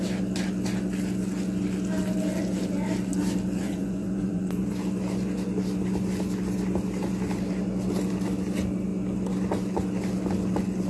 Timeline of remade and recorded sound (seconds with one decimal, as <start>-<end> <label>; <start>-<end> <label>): 0.0-3.6 recorded; 3.6-4.7 remade; 4.7-10.9 recorded